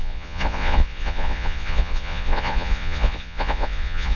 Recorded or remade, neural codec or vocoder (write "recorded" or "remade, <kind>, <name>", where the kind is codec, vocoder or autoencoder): remade, vocoder, Vocos